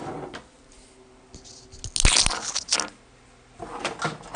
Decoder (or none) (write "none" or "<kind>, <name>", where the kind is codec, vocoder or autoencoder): none